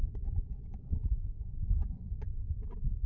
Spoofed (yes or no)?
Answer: yes